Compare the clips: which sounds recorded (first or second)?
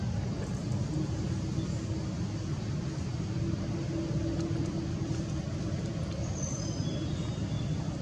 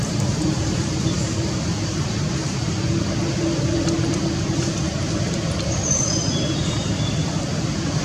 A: first